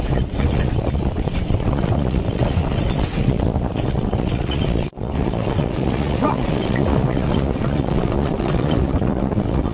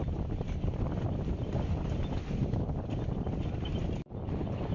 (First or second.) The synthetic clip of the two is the first